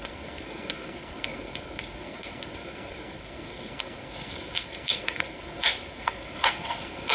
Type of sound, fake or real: fake